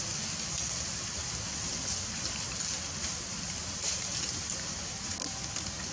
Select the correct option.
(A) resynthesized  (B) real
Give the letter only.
B